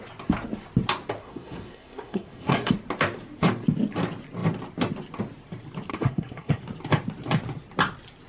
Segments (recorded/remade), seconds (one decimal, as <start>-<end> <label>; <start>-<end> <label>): 0.0-1.2 recorded; 1.2-2.7 remade; 2.7-5.9 recorded; 5.9-6.6 remade; 6.6-8.3 recorded